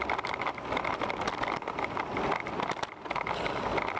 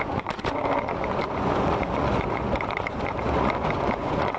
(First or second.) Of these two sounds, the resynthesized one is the second